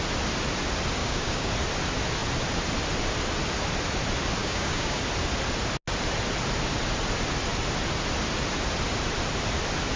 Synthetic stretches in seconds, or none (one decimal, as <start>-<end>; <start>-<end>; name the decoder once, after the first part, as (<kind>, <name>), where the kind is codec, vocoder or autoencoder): 1.0-1.5 (codec, DAC); 4.4-5.0